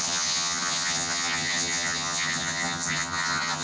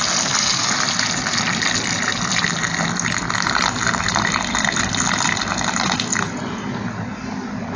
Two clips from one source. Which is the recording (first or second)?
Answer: second